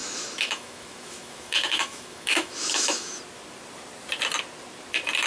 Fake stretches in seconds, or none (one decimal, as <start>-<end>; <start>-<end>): 0.0-3.2